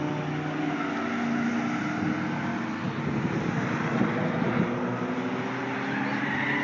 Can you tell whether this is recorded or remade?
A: recorded